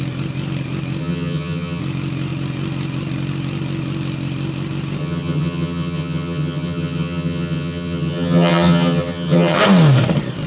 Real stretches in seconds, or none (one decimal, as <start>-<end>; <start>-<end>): 0.0-1.0; 1.8-5.0; 9.6-10.5